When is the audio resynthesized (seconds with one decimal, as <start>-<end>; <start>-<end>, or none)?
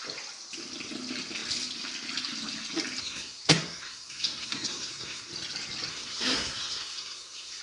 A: 3.0-5.3; 5.9-7.6